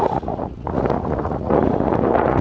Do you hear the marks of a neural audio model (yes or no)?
yes